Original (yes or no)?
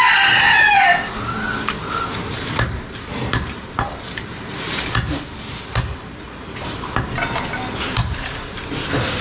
yes